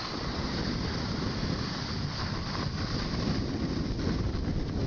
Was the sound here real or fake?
real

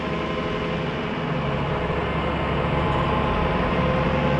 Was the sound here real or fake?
real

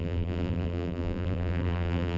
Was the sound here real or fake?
fake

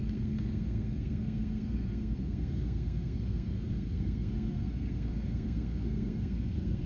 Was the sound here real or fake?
fake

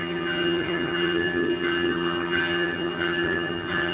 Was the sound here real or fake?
fake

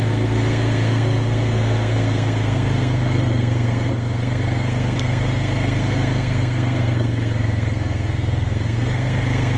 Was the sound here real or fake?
fake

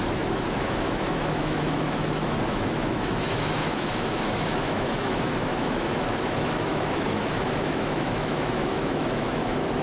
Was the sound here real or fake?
fake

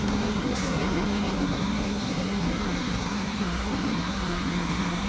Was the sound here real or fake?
fake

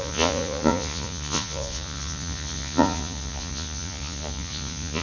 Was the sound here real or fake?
fake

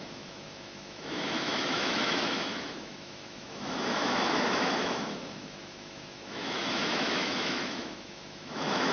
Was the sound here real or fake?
fake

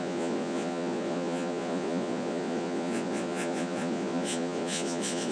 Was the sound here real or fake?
fake